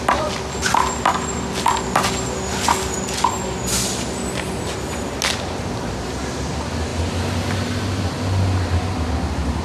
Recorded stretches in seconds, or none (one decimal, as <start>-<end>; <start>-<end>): 0.0-9.6